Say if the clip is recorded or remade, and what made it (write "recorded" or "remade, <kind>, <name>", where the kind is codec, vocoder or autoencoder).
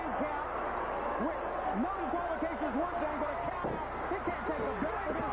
recorded